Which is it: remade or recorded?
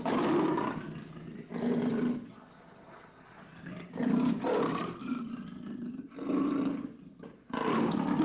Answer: recorded